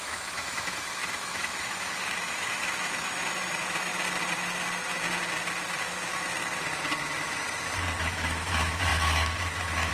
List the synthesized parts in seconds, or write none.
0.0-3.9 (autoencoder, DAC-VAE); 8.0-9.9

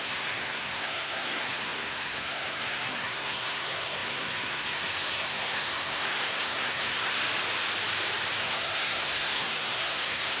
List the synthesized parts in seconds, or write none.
0.0-7.2 (codec, SNAC); 8.4-10.4

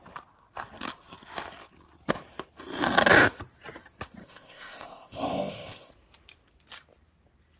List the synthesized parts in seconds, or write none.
4.2-5.9 (codec, ZipCodec)

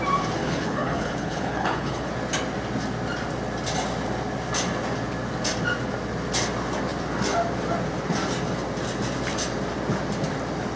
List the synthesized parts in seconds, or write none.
0.4-2.1 (codec, HILCodec)

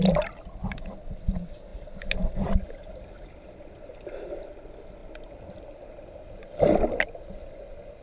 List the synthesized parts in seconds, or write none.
none

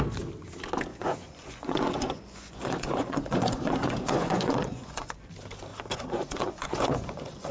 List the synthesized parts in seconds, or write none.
0.9-5.3 (vocoder, Vocos); 5.7-7.5